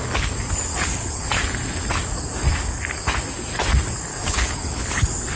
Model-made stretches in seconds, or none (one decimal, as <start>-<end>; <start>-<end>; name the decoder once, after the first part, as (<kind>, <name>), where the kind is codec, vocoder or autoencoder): 0.7-1.3 (codec, HILCodec); 4.1-5.0